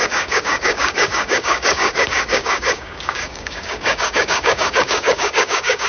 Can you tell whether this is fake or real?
fake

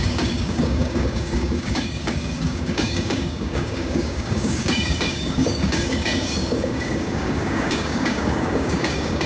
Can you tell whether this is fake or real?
fake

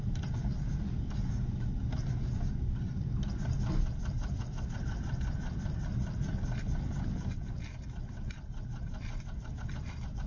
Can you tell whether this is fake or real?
real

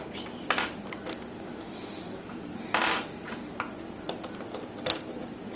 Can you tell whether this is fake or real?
real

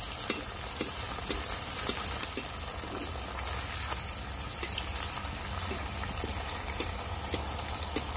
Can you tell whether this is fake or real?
real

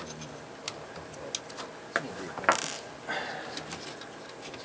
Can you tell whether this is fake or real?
real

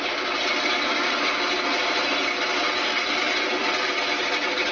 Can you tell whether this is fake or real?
real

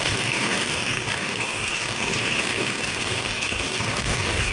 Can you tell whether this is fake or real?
fake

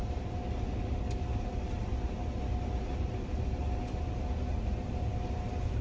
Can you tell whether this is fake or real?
real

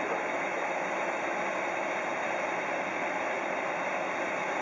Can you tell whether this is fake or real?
real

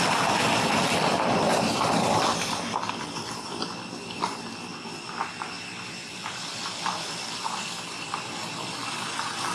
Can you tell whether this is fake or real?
real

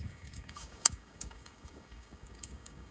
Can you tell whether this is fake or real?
fake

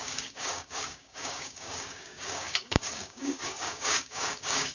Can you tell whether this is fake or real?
fake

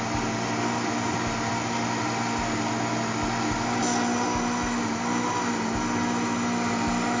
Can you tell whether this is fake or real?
real